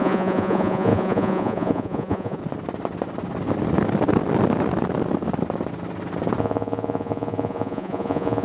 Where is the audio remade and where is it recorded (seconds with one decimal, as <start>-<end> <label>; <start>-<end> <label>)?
0.0-2.4 remade; 2.4-6.4 recorded; 6.4-8.4 remade